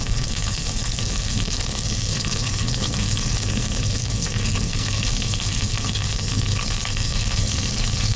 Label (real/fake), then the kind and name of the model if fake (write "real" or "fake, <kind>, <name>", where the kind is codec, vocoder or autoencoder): fake, codec, SNAC